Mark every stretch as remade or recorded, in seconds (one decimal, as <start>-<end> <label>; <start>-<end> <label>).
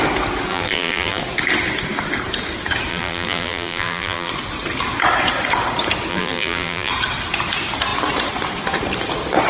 0.0-0.5 recorded; 0.5-1.2 remade; 1.2-2.9 recorded; 2.9-4.3 remade; 4.3-6.1 recorded; 6.1-6.9 remade; 6.9-9.5 recorded